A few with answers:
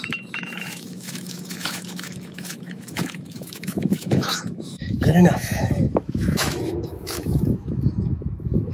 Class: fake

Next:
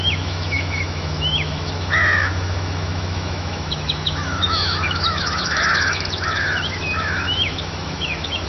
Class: fake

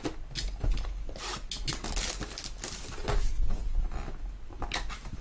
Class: real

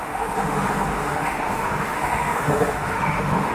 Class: fake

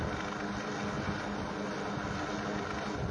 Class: real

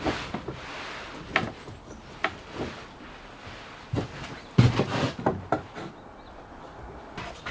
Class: real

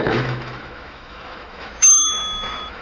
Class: fake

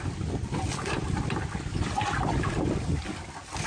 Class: real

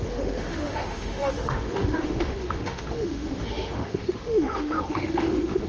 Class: fake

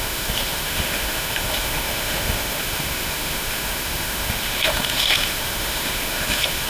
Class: fake